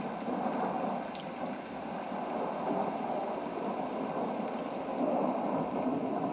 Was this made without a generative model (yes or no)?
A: yes